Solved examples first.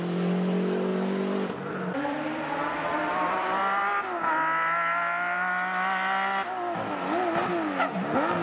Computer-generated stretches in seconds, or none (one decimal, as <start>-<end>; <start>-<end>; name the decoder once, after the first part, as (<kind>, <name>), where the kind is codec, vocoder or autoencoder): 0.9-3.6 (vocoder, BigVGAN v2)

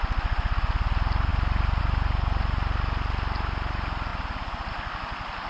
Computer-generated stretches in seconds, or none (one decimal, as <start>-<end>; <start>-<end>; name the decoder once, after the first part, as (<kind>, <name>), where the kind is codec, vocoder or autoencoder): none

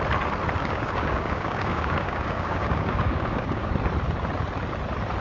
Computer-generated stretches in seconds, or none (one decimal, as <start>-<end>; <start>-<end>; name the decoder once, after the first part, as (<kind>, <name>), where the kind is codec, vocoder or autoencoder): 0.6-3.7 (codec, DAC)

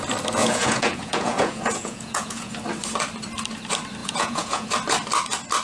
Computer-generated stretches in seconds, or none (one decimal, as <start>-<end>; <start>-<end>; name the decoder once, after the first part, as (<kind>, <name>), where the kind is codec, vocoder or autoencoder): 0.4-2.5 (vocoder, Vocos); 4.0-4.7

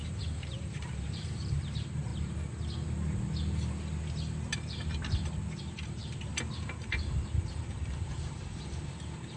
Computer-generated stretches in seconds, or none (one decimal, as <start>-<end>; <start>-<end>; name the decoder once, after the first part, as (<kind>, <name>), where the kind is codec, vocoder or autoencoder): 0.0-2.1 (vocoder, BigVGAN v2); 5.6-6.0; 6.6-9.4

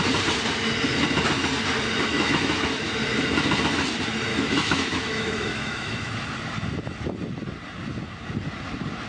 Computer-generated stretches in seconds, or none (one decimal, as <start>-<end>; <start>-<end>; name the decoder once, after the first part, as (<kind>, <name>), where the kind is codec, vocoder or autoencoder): 2.1-2.7 (autoencoder, DAC-VAE); 4.3-6.1